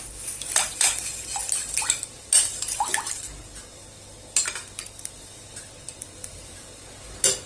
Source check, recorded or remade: recorded